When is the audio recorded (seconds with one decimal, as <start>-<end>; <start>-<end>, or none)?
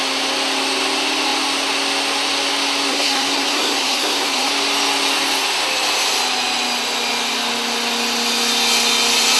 0.0-2.9; 4.5-9.4